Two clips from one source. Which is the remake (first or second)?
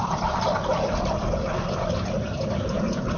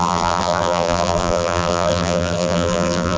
second